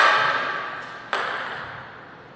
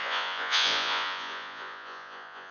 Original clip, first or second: first